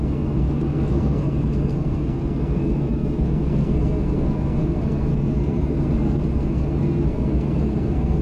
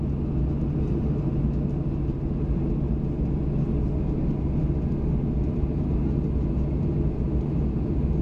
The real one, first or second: second